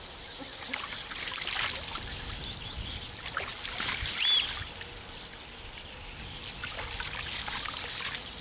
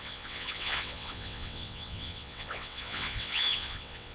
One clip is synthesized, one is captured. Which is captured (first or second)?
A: first